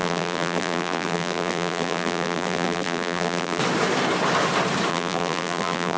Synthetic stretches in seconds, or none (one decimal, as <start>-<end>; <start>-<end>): 0.0-3.6; 4.9-6.0